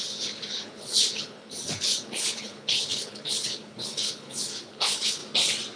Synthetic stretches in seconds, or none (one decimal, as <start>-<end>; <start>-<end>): 0.0-5.2